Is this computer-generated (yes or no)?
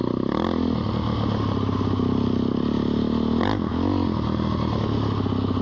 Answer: no